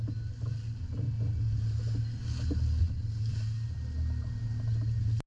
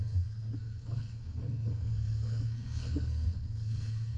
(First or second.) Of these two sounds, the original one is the first